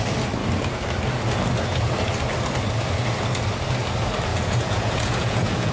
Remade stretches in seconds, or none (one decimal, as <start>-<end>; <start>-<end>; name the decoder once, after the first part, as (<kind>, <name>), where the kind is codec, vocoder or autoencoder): 4.3-5.7 (vocoder, Vocos)